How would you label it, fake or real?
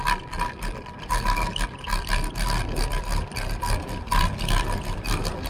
real